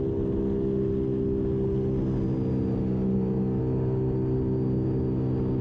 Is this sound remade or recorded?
recorded